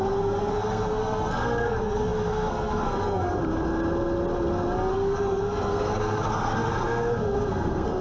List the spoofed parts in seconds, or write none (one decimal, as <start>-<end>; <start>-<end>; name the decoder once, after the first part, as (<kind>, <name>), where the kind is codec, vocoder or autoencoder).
0.0-3.4 (codec, SNAC); 4.9-8.0